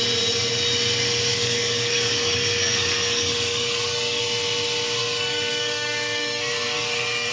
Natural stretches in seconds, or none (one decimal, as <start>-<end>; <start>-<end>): 0.0-1.3; 4.2-5.0